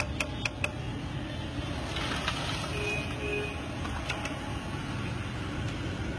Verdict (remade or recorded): recorded